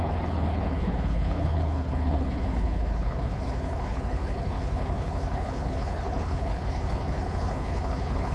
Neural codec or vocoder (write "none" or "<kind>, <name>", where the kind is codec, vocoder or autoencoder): codec, HILCodec